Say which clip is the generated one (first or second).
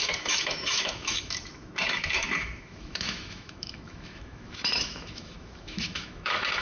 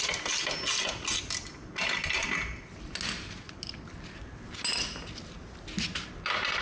first